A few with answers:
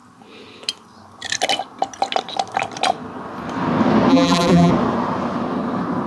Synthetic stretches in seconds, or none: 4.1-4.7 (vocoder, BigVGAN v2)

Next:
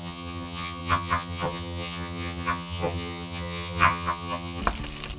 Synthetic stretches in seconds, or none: 0.0-4.6 (vocoder, HiFi-GAN)

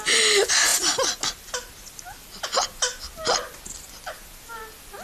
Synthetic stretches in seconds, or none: none

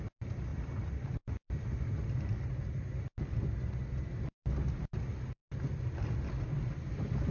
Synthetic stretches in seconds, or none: none

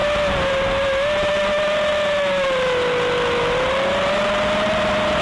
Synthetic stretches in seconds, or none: none

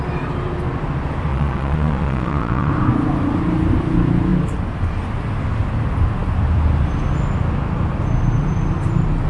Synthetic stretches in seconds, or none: 1.3-2.7 (vocoder, Vocos)